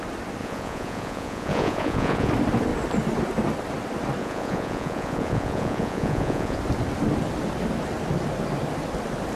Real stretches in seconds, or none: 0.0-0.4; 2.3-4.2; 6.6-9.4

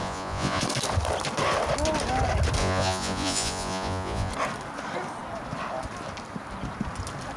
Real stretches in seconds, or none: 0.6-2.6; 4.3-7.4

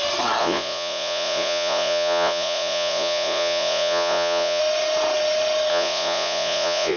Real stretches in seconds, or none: 0.0-0.4; 4.6-5.7

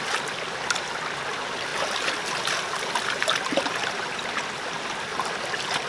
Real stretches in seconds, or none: 0.0-5.9

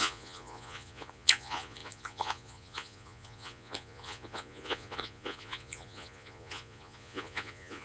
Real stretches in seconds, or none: none

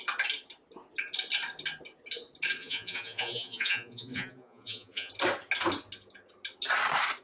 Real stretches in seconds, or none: 0.0-2.6; 5.1-7.2